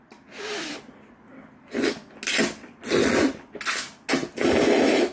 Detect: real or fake real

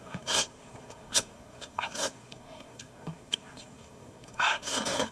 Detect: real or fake fake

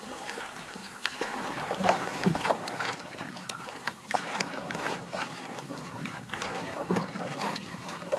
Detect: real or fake fake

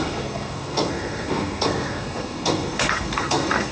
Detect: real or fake fake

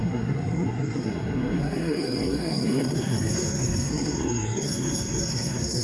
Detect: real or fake fake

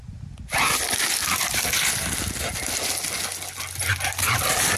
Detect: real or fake real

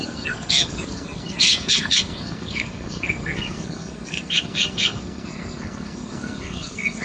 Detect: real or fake fake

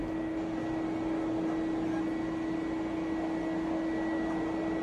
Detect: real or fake real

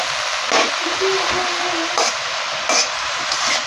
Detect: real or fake real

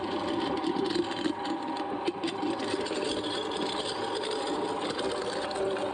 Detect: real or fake real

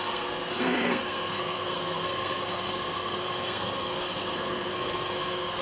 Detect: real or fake fake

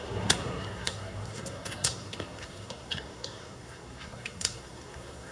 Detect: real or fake fake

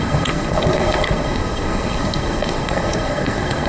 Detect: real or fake fake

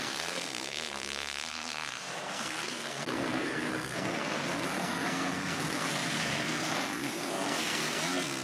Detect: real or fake fake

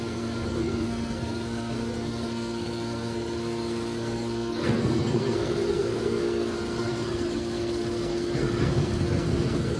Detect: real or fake fake